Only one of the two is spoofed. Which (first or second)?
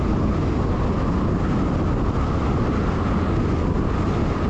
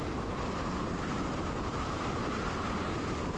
second